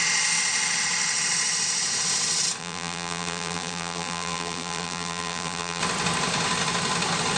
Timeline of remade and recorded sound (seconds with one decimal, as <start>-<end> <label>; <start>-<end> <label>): 0.0-2.6 recorded; 2.6-5.8 remade; 5.8-7.4 recorded